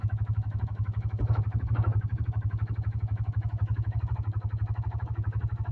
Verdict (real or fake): fake